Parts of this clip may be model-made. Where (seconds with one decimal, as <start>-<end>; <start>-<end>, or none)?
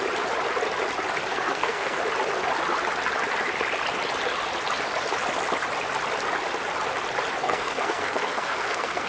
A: 1.3-2.0; 7.4-9.1